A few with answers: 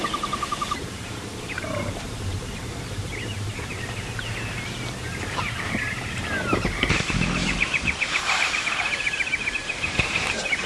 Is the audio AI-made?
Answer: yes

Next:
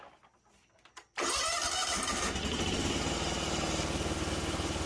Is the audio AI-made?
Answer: no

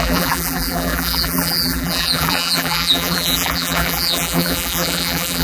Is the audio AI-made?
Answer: yes